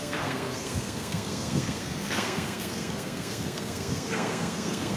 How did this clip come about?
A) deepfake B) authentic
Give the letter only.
A